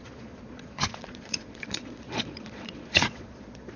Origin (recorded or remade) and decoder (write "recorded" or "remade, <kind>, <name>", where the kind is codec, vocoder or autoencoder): remade, vocoder, Vocos